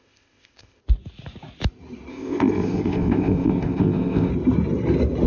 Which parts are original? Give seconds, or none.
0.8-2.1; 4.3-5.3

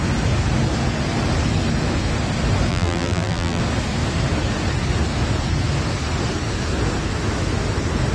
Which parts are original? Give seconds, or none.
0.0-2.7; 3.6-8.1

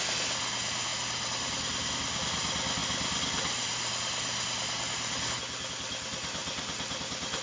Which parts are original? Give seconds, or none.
0.0-7.4

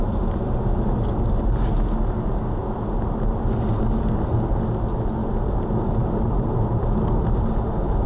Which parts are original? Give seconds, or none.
0.0-5.2; 7.0-8.1

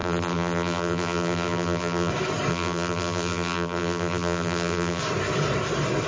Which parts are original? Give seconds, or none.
2.1-2.5; 5.0-6.1

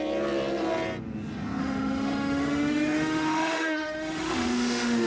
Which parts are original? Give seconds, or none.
0.0-1.6

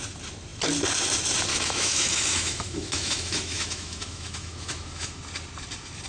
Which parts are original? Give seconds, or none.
0.0-1.5; 5.2-6.1